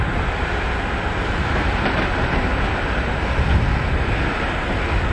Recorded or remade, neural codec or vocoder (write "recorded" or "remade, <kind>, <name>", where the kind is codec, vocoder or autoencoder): recorded